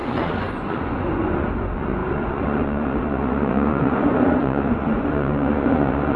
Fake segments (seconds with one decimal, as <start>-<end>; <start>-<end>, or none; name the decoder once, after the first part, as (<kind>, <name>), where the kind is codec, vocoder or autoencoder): 0.0-6.2 (vocoder, Vocos)